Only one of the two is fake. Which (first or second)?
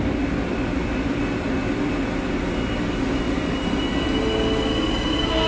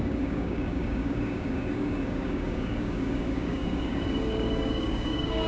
second